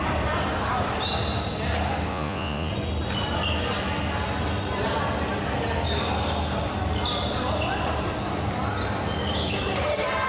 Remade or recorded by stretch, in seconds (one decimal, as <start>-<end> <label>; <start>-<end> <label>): 0.0-2.1 recorded; 2.1-2.7 remade; 2.7-10.3 recorded